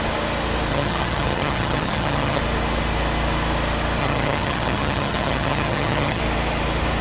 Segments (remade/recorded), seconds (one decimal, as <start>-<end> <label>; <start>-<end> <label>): 0.0-0.7 recorded; 0.7-2.4 remade; 2.4-4.0 recorded; 4.0-6.2 remade; 6.2-7.0 recorded